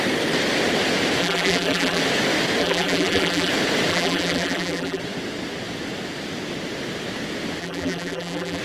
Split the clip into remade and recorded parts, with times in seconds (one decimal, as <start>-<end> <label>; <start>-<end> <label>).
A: 0.0-1.2 recorded; 1.2-2.0 remade; 2.0-2.6 recorded; 2.6-3.5 remade; 3.5-3.9 recorded; 3.9-5.0 remade; 5.0-7.6 recorded; 7.6-8.6 remade